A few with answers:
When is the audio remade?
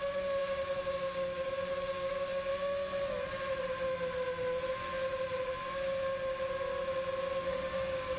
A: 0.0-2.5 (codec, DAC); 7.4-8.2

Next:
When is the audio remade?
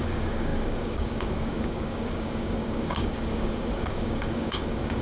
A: 0.0-5.0 (codec, DAC)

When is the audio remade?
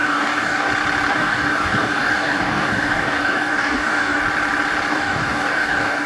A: 0.0-0.7 (codec, DAC); 1.1-4.2; 4.9-6.1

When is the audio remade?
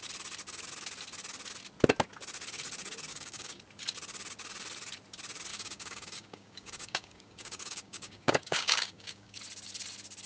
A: 3.1-3.6 (codec, DAC); 5.5-9.4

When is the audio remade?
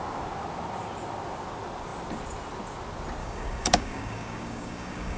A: 3.2-5.2 (codec, DAC)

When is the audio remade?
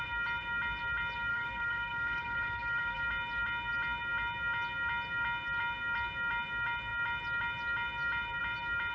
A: 1.3-3.0 (codec, DAC)